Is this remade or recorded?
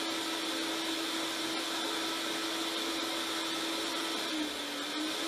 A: recorded